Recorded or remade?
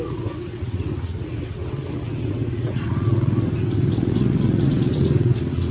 remade